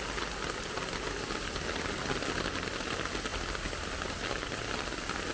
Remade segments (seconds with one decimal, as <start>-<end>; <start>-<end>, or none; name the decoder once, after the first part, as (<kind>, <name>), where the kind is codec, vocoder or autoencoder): none